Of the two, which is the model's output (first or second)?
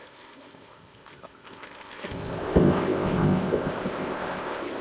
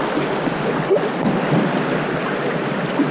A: first